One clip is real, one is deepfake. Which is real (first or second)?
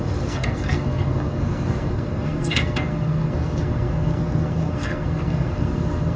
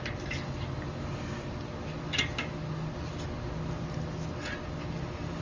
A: second